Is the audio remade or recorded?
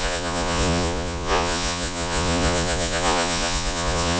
remade